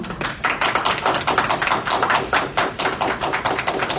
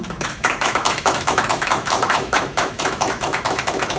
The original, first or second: first